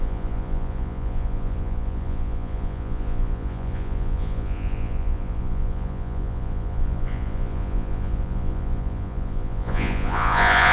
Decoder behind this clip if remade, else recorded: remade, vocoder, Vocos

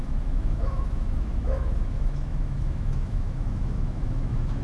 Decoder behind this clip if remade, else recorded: remade, autoencoder, DAC-VAE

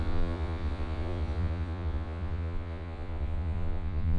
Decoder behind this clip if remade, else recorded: remade, vocoder, Vocos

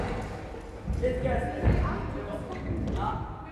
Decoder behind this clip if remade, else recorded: recorded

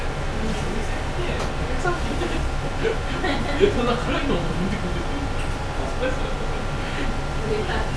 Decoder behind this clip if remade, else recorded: recorded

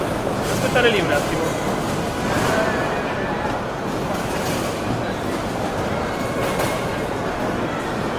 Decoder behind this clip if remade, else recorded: recorded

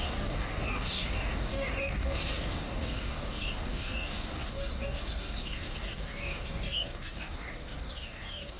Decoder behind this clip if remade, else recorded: remade, codec, DAC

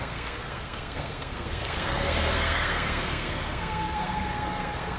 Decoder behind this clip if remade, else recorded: remade, codec, SNAC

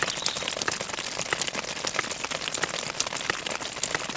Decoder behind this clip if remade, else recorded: recorded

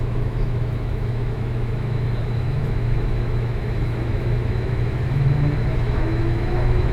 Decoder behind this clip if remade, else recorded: remade, autoencoder, DAC-VAE